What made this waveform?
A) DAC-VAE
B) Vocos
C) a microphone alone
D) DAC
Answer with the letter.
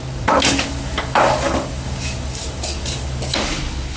D